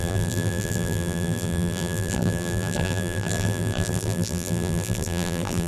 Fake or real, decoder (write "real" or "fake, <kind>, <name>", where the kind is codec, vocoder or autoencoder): fake, vocoder, BigVGAN v2